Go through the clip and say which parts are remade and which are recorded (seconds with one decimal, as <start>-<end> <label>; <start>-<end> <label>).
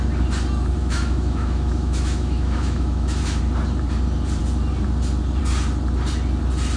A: 0.0-0.8 recorded; 0.8-3.4 remade; 3.4-6.8 recorded